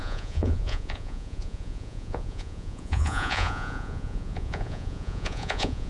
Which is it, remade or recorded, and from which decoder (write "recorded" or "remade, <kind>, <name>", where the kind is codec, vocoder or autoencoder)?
remade, vocoder, Vocos